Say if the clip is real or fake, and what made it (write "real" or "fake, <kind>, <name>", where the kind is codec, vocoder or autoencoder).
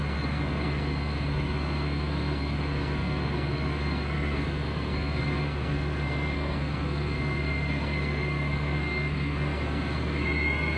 fake, codec, SNAC